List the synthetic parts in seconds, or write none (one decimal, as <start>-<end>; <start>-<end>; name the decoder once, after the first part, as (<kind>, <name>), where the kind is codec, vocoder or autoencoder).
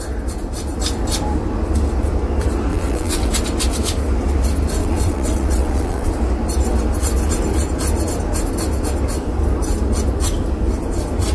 2.7-3.3 (vocoder, WaveNeXt); 4.8-6.1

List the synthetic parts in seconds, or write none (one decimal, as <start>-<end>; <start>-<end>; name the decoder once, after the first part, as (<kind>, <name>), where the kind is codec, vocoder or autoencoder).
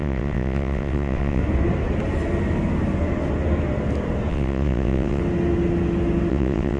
0.0-1.4 (vocoder, WaveNeXt); 4.3-5.2; 6.3-6.8